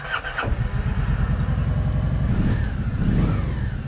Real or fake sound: real